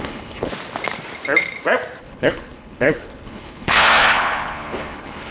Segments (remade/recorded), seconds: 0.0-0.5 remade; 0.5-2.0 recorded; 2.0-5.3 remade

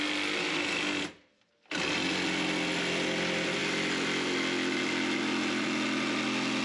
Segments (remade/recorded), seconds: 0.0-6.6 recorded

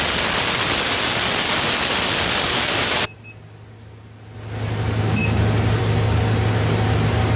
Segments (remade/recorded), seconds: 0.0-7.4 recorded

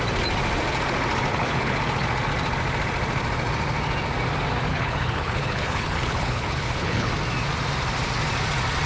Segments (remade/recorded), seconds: 0.0-1.3 recorded; 1.3-1.8 remade; 1.8-4.7 recorded; 4.7-7.1 remade; 7.1-8.9 recorded

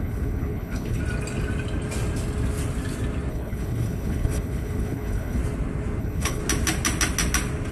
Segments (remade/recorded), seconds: 0.0-1.0 remade; 1.0-3.3 recorded; 3.3-5.4 remade; 5.4-6.0 recorded; 6.0-6.4 remade; 6.4-7.7 recorded

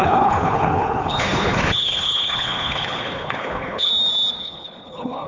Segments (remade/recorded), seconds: 0.0-3.9 remade; 3.9-4.4 recorded; 4.4-5.3 remade